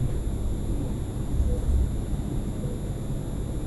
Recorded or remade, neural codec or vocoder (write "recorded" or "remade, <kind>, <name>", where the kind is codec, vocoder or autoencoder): recorded